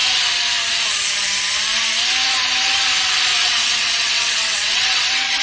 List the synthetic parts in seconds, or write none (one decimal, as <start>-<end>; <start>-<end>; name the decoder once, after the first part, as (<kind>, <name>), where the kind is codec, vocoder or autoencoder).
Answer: 3.3-5.4 (vocoder, WaveNeXt)